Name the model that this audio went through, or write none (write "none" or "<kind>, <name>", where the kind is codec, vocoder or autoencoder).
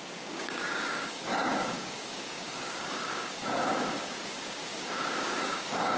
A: codec, DAC